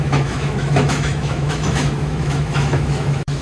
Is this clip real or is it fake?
fake